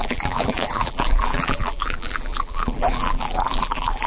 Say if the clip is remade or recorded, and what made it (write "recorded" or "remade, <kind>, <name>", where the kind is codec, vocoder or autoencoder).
remade, vocoder, BigVGAN v2